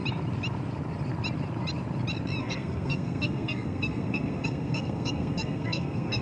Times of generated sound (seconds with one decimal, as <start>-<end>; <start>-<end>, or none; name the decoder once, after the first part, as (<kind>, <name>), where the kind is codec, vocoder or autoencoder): 2.4-6.2 (codec, SNAC)